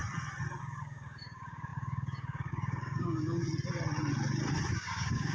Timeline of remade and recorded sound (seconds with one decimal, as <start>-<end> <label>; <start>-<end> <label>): 0.0-0.6 recorded; 0.6-3.4 remade; 3.4-4.7 recorded; 4.7-5.3 remade